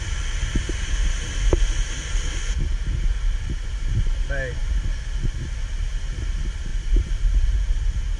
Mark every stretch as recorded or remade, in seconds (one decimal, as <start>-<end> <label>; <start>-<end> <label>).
0.0-6.7 recorded; 6.7-8.2 remade